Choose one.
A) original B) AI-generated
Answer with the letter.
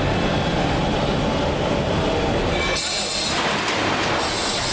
A